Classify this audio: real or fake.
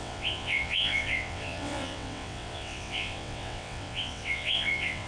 fake